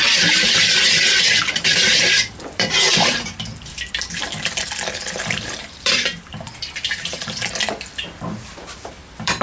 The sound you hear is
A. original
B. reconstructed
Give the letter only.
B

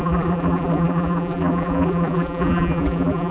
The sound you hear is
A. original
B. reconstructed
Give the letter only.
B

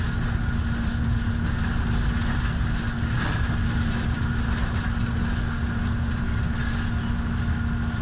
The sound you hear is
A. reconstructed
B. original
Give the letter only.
B